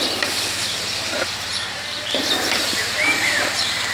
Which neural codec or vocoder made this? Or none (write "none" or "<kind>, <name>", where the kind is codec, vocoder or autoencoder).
vocoder, BigVGAN v2